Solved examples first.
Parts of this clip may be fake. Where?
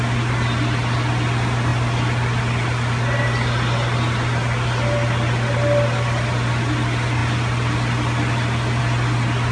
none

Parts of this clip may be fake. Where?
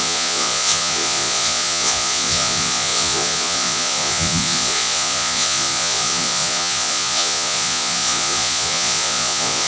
0.0-9.7 (vocoder, Vocos)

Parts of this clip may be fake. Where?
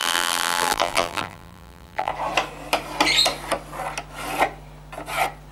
0.0-2.1 (vocoder, BigVGAN v2)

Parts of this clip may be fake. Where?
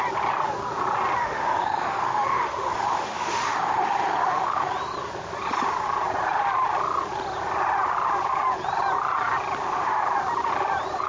1.2-4.7 (autoencoder, DAC-VAE)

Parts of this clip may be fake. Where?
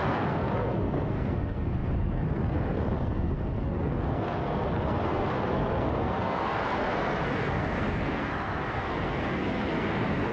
0.0-10.3 (codec, SNAC)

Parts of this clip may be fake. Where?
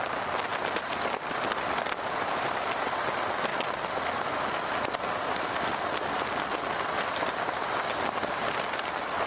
none